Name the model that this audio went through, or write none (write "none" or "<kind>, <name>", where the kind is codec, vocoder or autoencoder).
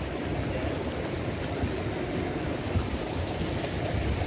vocoder, BigVGAN v2